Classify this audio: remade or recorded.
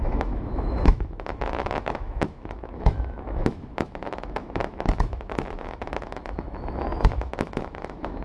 remade